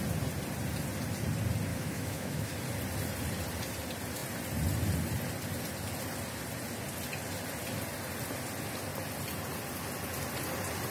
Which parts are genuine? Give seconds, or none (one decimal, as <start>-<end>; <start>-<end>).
0.0-1.7; 2.5-10.9